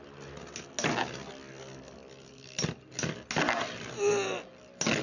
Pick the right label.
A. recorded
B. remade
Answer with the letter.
A